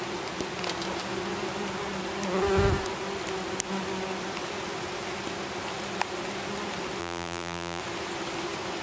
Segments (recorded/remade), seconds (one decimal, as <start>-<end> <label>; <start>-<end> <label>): 0.0-7.0 recorded; 7.0-7.8 remade; 7.8-8.8 recorded